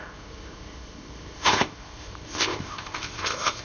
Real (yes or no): no